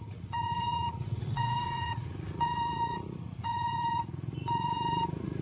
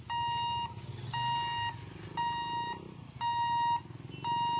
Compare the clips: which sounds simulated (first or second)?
first